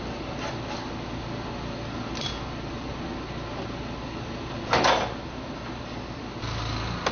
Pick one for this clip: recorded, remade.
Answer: recorded